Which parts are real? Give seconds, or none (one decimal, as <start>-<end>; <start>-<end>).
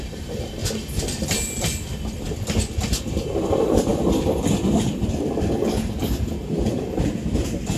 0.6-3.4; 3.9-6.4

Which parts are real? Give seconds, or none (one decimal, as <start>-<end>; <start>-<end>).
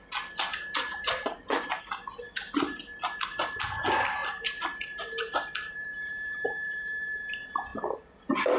0.0-0.5; 1.8-4.2; 7.2-8.6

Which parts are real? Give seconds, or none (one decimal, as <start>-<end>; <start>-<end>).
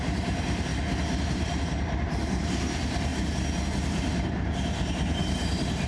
0.7-1.3; 3.1-3.7